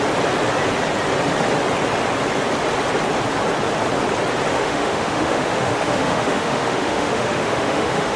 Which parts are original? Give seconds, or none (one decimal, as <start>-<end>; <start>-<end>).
0.0-4.5